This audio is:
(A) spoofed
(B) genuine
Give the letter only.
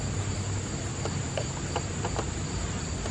B